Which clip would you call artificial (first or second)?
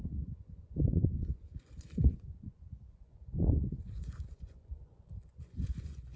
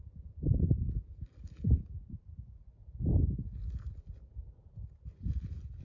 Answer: first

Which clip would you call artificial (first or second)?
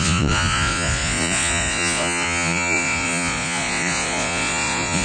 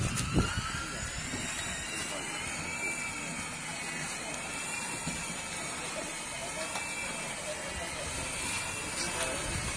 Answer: first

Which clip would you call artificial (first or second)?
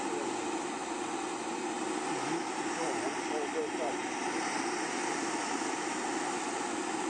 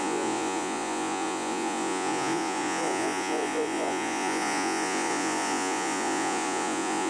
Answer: second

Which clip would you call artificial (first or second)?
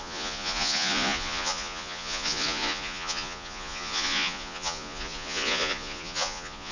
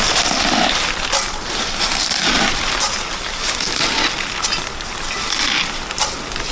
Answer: first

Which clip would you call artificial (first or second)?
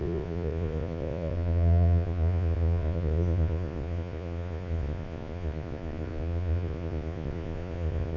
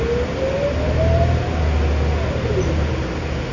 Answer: first